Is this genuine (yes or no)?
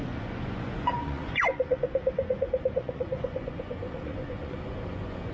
no